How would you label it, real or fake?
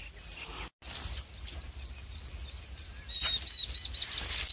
real